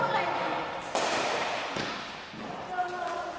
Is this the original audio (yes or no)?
yes